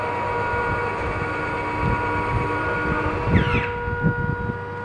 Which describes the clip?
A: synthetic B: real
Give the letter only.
B